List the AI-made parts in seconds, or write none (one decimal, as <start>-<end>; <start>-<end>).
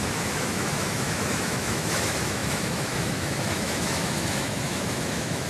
0.0-5.5